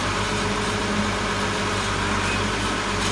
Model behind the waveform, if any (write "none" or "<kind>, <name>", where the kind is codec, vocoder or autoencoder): none